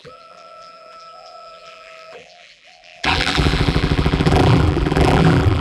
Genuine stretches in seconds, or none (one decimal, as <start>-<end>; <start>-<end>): none